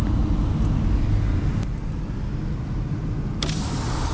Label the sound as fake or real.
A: real